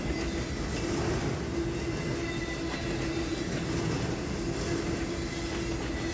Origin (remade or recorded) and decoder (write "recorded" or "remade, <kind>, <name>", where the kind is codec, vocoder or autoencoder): recorded